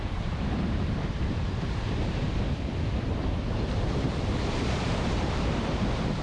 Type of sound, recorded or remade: remade